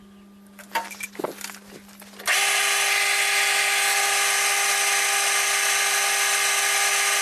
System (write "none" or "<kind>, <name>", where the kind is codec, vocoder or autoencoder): none